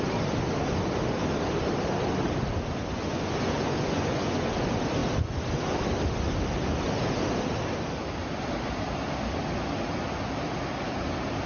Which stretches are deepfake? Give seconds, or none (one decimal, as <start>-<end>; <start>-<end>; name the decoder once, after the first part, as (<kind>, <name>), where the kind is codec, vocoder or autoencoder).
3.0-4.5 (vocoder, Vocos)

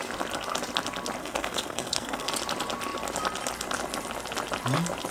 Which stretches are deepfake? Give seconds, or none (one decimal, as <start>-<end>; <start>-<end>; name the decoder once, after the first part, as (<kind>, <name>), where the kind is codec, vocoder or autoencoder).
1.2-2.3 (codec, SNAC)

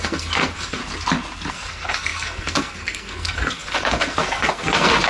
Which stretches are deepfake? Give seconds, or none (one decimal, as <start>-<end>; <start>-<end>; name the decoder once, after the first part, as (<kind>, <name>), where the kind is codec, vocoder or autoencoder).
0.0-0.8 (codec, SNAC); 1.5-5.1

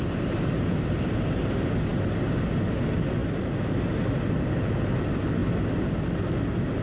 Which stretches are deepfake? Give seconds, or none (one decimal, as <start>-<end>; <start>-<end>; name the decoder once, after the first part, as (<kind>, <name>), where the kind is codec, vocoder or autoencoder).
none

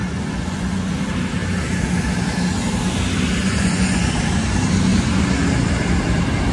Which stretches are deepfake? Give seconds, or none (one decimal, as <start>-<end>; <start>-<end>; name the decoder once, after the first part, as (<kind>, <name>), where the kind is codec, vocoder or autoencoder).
0.0-1.0 (vocoder, Vocos); 3.4-4.0

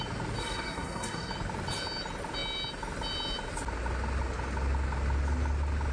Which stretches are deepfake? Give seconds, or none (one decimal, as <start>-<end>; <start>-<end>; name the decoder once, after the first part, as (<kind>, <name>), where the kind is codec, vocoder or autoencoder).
0.4-1.3 (codec, SNAC)